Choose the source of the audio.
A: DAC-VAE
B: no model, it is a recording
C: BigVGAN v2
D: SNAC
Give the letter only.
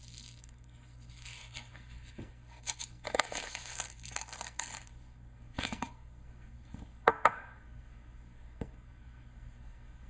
D